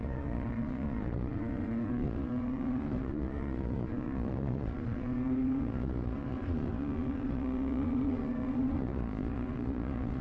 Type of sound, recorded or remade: remade